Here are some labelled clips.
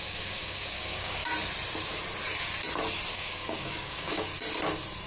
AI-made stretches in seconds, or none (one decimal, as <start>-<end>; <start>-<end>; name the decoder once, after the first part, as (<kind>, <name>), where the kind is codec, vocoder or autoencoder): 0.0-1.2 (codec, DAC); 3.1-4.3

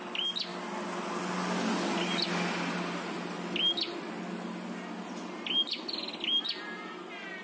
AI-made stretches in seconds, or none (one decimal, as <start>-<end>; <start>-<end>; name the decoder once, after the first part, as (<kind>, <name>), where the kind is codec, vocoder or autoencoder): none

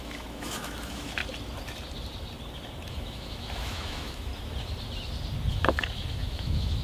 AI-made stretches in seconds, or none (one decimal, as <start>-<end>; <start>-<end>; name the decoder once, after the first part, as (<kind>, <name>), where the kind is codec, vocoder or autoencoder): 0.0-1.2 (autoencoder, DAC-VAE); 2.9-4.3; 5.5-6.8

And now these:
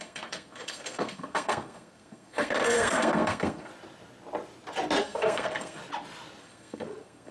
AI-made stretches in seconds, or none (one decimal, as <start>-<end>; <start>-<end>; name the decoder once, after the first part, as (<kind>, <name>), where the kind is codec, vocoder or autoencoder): 0.0-3.7 (codec, SNAC); 5.0-5.8; 6.4-7.3

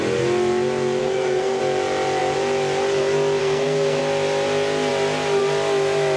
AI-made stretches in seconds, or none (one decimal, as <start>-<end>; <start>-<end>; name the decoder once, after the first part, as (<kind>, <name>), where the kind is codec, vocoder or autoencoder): 1.0-1.6 (codec, SNAC); 3.4-4.0

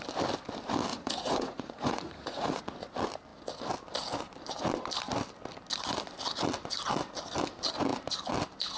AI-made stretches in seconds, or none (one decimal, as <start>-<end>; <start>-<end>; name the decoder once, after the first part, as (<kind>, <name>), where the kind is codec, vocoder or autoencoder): 0.9-2.6 (vocoder, Vocos)

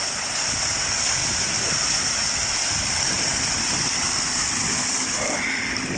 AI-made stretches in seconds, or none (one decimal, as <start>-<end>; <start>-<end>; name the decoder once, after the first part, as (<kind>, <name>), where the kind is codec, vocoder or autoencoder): none

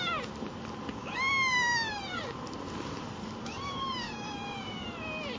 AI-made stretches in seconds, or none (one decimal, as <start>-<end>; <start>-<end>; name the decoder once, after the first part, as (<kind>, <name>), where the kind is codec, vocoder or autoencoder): 0.9-2.2 (codec, DAC); 3.4-4.9